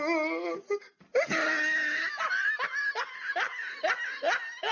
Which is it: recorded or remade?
recorded